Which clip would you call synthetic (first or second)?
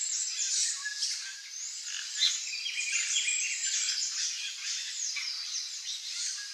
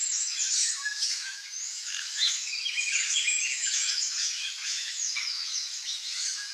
second